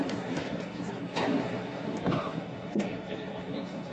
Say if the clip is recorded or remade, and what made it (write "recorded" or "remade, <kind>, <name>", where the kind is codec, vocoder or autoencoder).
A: remade, codec, SNAC